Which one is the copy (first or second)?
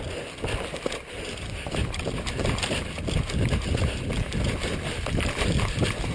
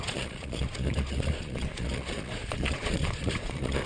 second